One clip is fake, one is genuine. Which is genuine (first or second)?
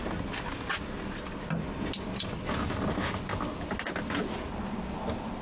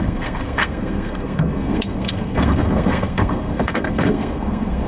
first